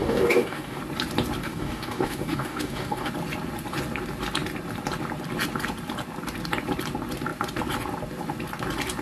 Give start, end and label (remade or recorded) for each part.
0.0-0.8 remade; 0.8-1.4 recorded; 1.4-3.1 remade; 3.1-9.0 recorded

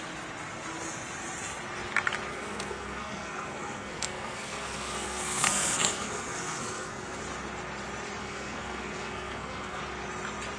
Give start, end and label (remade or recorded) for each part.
0.0-2.3 recorded; 2.3-7.2 remade; 7.2-8.2 recorded; 8.2-9.8 remade; 9.8-10.6 recorded

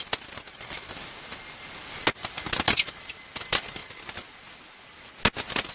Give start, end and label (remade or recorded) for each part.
0.0-5.7 recorded

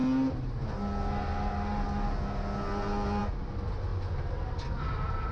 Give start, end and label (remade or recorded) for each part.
0.0-5.3 recorded

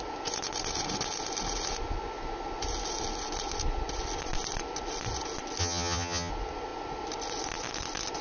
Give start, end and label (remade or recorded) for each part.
0.0-5.6 recorded; 5.6-6.3 remade; 6.3-8.2 recorded

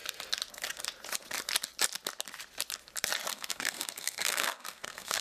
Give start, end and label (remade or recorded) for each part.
0.0-3.3 recorded; 3.3-5.2 remade

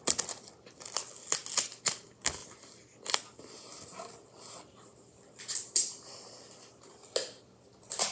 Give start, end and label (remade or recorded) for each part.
0.0-8.1 recorded

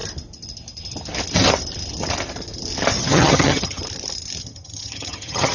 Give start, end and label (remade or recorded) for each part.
0.0-3.0 recorded; 3.0-3.8 remade; 3.8-4.4 recorded; 4.4-5.5 remade